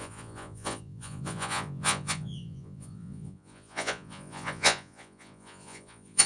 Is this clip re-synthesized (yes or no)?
yes